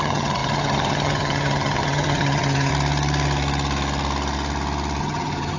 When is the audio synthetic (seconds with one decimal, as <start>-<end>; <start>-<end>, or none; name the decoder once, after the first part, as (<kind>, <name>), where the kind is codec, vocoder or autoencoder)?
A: 0.0-2.7 (vocoder, HiFi-GAN); 5.0-5.6